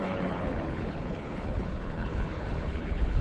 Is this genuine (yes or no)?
no